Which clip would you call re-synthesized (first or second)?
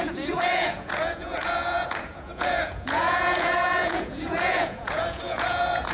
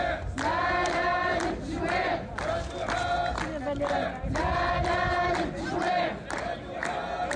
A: first